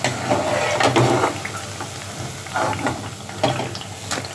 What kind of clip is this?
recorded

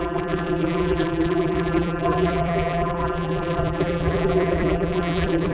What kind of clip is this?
remade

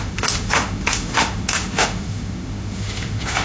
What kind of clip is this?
remade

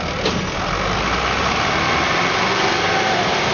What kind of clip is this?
recorded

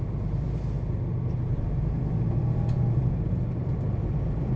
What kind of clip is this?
recorded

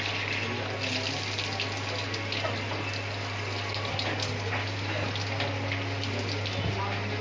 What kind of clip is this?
recorded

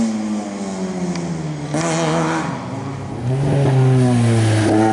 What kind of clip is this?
recorded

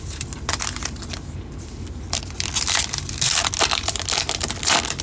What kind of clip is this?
remade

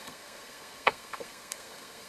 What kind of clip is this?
remade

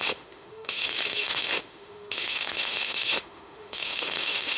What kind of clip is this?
remade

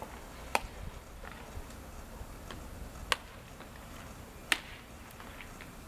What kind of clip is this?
recorded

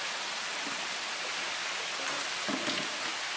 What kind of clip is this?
recorded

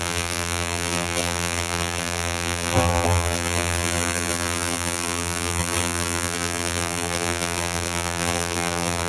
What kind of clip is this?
remade